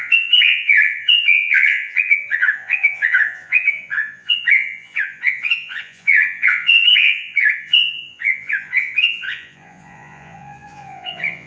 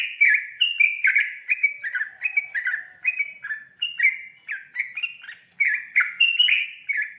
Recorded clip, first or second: second